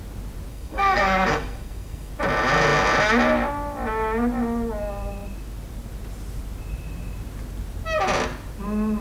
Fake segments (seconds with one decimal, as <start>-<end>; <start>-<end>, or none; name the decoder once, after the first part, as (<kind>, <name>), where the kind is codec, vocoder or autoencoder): 0.5-2.1 (codec, SNAC)